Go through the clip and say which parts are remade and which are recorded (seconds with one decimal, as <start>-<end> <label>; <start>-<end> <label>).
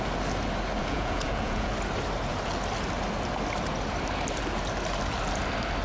0.0-0.8 recorded; 0.8-1.7 remade; 1.7-5.8 recorded